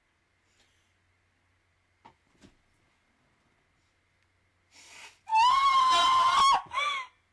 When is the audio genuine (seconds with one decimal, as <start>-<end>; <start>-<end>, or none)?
0.0-7.3